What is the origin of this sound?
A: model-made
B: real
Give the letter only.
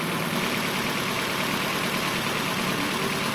B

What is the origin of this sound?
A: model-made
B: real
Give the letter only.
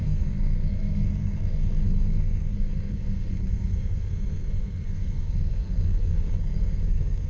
A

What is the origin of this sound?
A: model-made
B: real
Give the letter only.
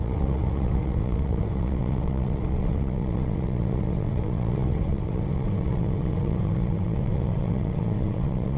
A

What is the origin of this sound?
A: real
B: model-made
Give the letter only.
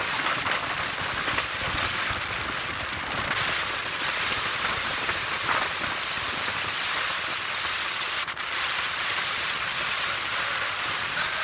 A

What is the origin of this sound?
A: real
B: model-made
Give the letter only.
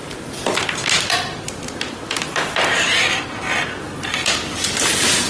A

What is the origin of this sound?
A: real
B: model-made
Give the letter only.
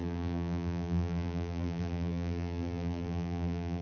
B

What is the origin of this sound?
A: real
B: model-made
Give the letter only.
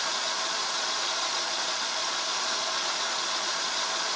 B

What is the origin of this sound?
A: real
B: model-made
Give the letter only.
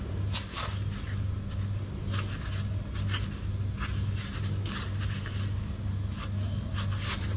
A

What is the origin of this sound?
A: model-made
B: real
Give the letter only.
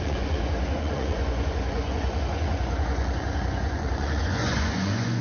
A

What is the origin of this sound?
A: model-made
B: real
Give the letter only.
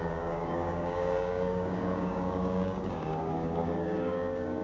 A